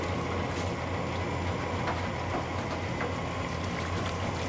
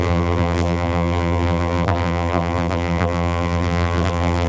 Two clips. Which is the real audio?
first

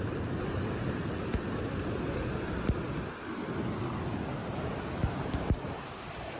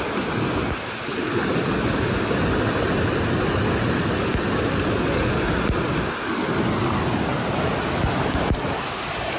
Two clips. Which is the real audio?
second